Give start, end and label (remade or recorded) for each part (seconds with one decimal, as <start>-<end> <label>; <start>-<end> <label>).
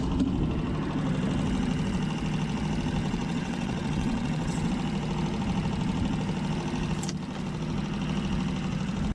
0.0-3.0 recorded; 3.0-4.7 remade; 4.7-9.1 recorded